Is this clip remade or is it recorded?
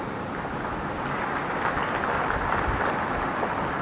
recorded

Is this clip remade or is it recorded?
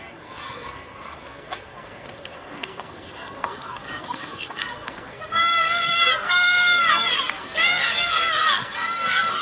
remade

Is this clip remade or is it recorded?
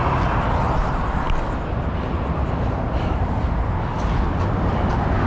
recorded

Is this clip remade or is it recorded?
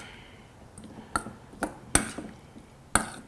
recorded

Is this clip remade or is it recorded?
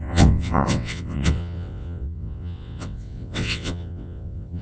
remade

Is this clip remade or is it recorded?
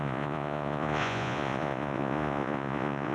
remade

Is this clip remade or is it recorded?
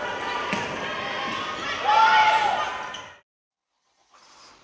recorded